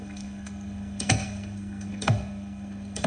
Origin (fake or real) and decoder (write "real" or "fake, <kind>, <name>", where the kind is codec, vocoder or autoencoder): fake, codec, SNAC